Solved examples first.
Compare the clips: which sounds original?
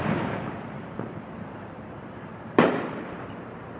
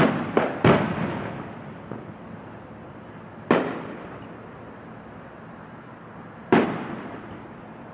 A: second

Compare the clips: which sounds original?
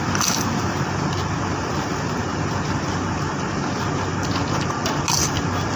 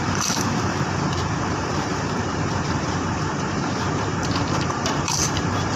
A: first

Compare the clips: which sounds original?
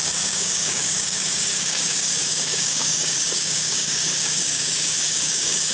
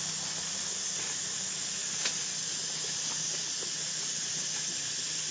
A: second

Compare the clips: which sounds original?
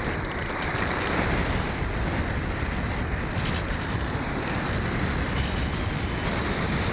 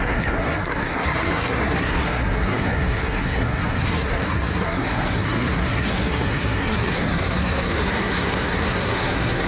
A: first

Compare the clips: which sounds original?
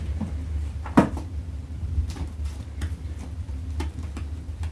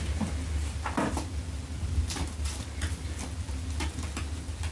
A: second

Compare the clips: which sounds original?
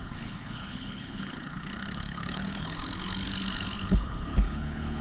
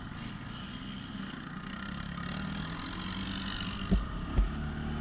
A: second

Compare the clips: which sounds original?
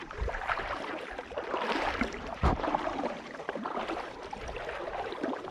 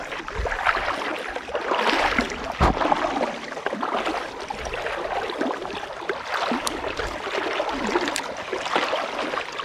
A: second